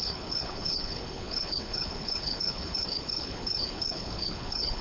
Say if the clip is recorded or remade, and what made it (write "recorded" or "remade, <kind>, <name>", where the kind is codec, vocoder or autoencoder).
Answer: remade, codec, HILCodec